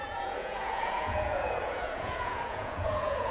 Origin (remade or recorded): remade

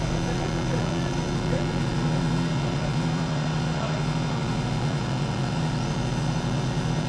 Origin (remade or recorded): remade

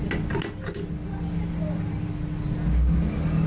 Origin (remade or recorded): recorded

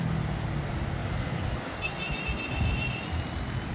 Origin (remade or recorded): recorded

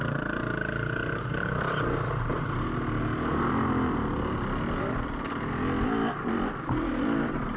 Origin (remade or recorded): recorded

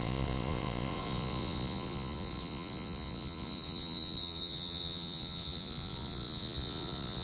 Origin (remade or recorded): remade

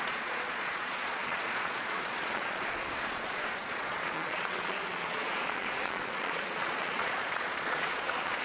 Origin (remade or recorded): remade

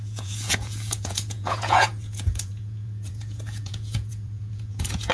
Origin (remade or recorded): remade